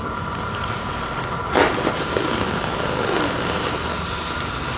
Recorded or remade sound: recorded